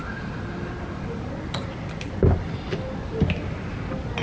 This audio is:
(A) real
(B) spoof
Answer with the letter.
A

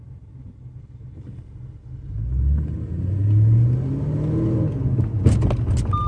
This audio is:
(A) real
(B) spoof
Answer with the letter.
A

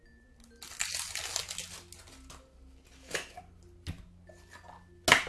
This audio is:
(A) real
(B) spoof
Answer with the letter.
A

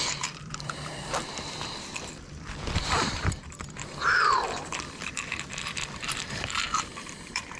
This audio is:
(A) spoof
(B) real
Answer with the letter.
A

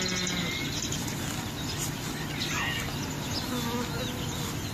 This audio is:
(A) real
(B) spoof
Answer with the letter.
A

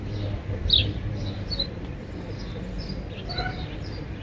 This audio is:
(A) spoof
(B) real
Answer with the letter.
B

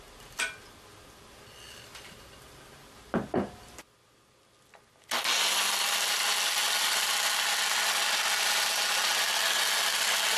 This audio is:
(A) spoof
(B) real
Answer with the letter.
B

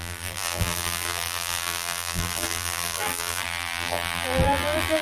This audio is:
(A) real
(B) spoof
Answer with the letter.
B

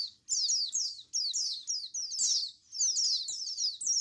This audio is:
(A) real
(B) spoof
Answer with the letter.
A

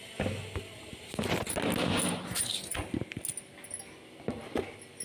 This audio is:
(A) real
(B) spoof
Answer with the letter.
A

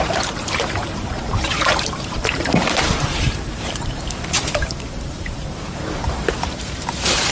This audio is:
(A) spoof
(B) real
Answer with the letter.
A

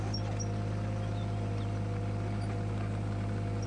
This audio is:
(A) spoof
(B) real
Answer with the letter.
B